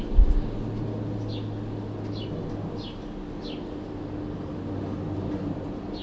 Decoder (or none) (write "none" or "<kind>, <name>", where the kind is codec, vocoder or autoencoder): none